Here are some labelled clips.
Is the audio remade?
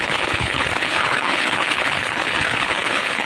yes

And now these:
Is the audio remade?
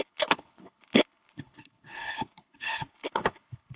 yes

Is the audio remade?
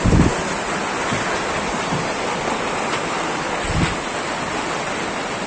no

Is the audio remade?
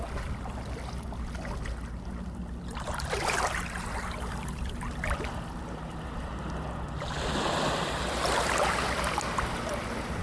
no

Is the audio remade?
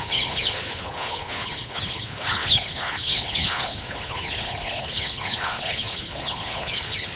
yes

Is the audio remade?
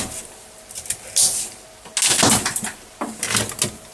no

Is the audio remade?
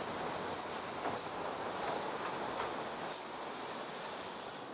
no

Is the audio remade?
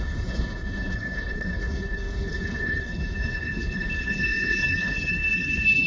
yes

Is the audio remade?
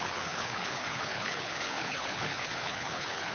yes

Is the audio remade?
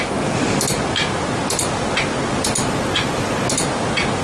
no